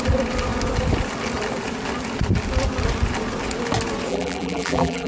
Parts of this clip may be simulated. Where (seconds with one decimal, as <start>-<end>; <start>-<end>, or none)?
4.1-5.1